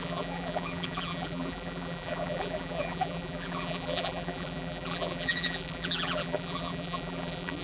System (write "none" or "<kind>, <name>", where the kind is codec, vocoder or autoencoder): vocoder, BigVGAN v2